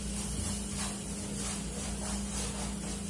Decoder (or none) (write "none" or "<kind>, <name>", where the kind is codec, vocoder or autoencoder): none